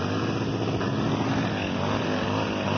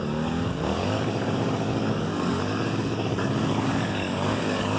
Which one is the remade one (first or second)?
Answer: second